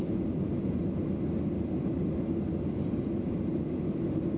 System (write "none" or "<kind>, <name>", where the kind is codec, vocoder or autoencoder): none